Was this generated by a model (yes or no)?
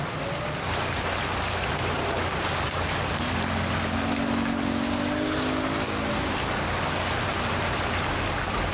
no